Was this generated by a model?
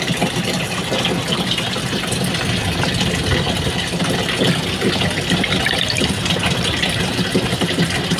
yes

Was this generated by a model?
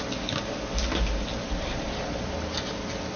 no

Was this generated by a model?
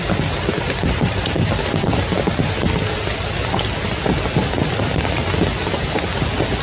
no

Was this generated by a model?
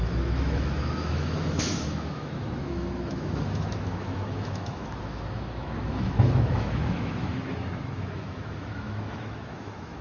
yes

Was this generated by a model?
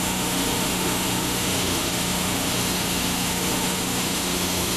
yes